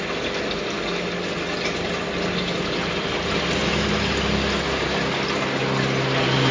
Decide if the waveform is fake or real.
real